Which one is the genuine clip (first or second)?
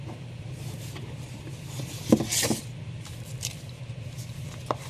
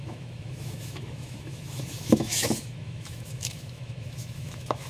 first